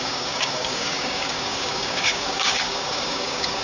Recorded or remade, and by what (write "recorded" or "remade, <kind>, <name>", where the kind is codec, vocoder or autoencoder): remade, codec, DAC